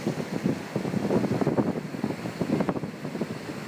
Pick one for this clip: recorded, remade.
recorded